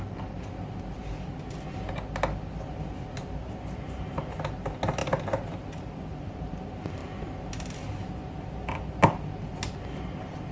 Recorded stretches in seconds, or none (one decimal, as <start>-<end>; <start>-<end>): 0.0-10.5